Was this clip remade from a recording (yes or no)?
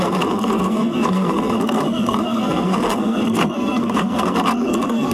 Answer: yes